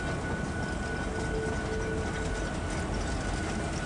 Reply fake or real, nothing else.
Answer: real